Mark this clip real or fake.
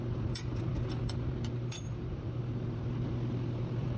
fake